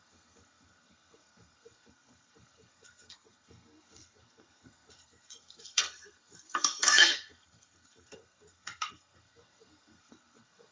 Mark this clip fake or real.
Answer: fake